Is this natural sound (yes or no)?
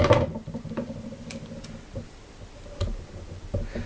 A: yes